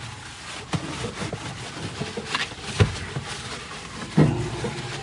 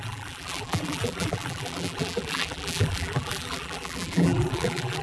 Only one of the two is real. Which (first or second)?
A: first